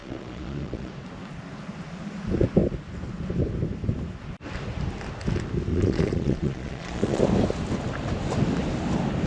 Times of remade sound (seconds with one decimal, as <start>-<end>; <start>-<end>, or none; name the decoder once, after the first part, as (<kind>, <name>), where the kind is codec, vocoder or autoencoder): 0.0-0.9 (vocoder, Vocos); 5.7-7.2